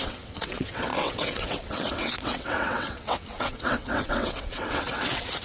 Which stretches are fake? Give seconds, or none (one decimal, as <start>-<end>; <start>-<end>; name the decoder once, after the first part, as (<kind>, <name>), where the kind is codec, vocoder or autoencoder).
0.0-5.4 (vocoder, WaveNeXt)

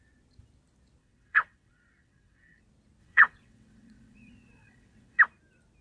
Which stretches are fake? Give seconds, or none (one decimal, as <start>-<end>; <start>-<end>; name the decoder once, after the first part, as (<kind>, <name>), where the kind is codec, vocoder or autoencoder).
1.0-2.6 (vocoder, WaveNeXt); 3.0-5.2

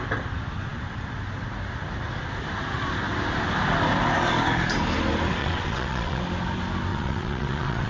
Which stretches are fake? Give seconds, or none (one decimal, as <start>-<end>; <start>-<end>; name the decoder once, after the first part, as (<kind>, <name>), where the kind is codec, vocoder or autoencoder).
5.4-6.2 (vocoder, WaveNeXt); 6.9-7.9